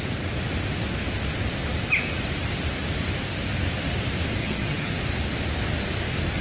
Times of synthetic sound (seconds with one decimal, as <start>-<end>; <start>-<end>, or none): 4.4-4.9